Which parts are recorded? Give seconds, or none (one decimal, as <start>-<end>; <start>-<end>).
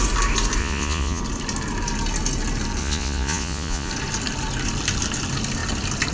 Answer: 0.0-0.6; 1.2-2.8; 3.9-6.1